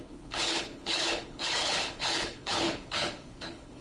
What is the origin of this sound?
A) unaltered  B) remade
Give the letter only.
B